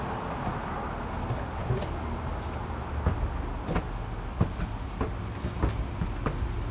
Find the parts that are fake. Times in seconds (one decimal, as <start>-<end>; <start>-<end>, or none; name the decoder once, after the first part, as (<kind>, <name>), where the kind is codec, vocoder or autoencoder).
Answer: none

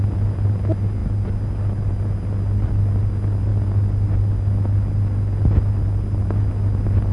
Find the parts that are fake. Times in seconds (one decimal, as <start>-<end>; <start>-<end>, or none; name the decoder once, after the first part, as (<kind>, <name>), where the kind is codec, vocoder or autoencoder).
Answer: none

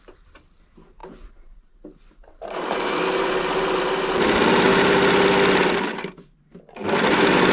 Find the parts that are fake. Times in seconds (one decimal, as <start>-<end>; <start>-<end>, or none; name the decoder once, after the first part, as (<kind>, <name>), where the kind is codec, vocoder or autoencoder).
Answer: none